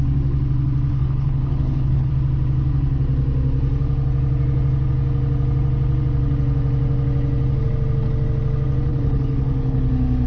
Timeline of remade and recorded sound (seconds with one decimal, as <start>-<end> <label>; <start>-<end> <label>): 0.0-0.9 recorded; 0.9-2.1 remade; 2.1-8.9 recorded; 8.9-9.9 remade; 9.9-10.3 recorded